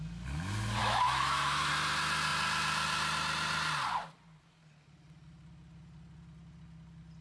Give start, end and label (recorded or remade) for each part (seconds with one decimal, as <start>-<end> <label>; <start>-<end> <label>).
0.0-0.8 recorded; 0.8-1.7 remade; 1.7-7.2 recorded